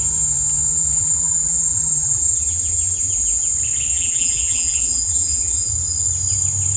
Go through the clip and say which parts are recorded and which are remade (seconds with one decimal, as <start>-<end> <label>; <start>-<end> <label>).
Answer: 0.0-0.7 recorded; 0.7-3.5 remade; 3.5-3.9 recorded; 3.9-5.7 remade; 5.7-6.8 recorded

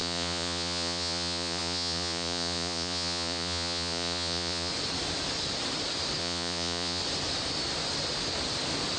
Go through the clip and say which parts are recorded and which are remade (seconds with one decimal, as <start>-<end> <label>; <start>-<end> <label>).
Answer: 0.0-4.7 remade; 4.7-6.2 recorded; 6.2-7.0 remade; 7.0-9.0 recorded

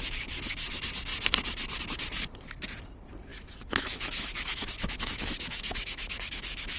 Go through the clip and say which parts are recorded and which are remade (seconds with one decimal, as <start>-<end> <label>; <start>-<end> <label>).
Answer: 0.0-3.3 recorded; 3.3-6.8 remade

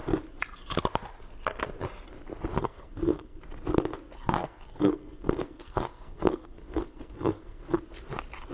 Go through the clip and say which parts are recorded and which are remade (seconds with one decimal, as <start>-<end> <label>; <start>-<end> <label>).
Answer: 0.0-2.6 recorded; 2.6-3.4 remade; 3.4-4.4 recorded; 4.4-7.8 remade; 7.8-8.5 recorded

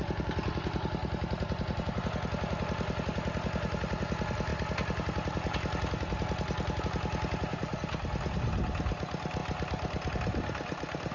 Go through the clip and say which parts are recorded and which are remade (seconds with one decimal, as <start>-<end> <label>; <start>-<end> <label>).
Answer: 0.0-1.0 recorded; 1.0-2.0 remade; 2.0-11.1 recorded

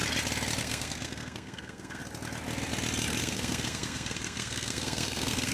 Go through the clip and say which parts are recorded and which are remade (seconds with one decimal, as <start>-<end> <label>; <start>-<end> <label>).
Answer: 0.0-0.6 recorded; 0.6-2.0 remade; 2.0-3.2 recorded; 3.2-5.5 remade